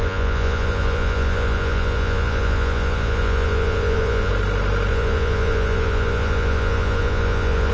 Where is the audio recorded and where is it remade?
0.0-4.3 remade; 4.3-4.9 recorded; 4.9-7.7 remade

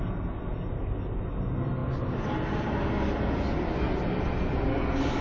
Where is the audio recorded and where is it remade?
0.0-5.2 recorded

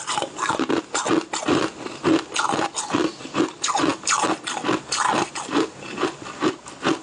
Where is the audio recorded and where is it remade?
0.0-7.0 recorded

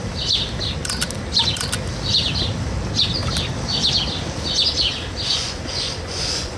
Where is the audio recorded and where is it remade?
0.0-5.3 recorded; 5.3-6.6 remade